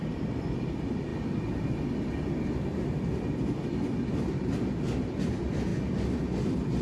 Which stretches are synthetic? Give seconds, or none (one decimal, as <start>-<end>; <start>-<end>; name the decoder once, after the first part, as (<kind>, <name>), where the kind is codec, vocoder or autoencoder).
0.0-1.1 (vocoder, BigVGAN v2); 5.2-5.7